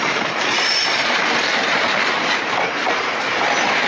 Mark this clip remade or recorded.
remade